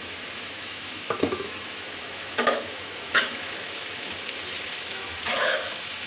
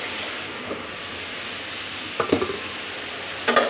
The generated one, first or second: first